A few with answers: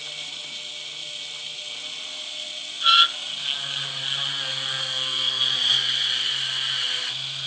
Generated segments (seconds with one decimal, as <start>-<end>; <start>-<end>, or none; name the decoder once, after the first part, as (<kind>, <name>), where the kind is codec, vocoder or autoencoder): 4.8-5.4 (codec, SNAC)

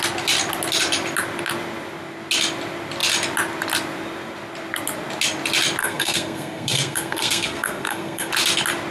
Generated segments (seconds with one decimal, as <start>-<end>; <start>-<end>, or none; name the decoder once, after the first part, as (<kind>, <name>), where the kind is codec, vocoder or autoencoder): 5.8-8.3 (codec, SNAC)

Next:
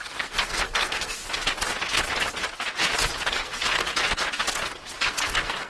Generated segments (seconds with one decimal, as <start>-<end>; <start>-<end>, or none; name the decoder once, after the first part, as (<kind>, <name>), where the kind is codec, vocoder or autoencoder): 0.0-1.2 (codec, SNAC); 3.3-3.8; 5.0-5.7

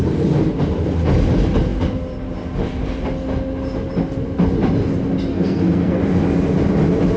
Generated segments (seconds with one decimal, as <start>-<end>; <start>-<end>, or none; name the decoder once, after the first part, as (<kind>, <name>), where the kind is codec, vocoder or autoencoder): 5.3-6.0 (codec, SNAC)

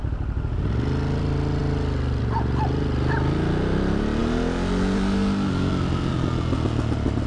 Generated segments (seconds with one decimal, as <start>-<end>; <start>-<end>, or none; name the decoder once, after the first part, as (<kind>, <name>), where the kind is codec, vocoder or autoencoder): none